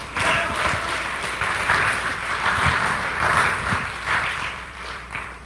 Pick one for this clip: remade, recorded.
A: remade